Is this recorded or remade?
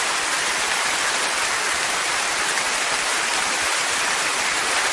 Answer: remade